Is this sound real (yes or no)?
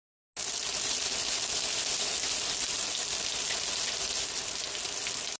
yes